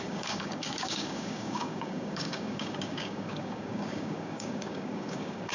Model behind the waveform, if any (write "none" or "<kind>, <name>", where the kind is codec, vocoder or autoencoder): codec, DAC